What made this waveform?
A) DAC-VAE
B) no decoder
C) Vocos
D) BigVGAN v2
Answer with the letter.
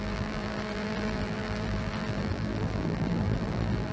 D